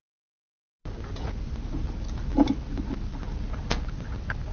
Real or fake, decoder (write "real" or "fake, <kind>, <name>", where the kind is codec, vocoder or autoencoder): real